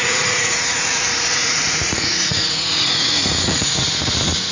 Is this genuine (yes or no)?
no